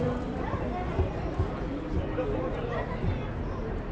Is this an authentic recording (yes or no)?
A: yes